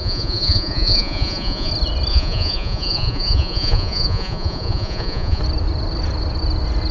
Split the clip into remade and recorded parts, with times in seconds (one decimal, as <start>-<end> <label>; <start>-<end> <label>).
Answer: 0.0-1.7 remade; 1.7-2.1 recorded; 2.1-5.4 remade; 5.4-6.9 recorded